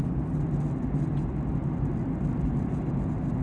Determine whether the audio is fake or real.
real